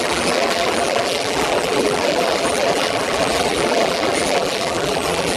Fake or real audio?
fake